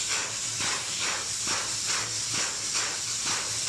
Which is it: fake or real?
real